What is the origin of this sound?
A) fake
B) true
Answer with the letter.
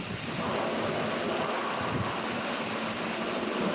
B